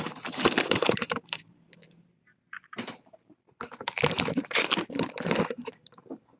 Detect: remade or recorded remade